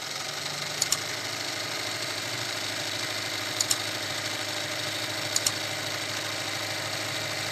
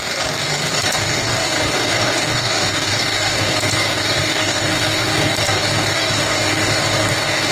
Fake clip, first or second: second